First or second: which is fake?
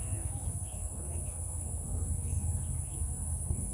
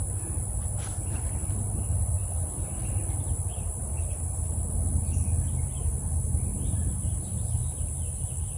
first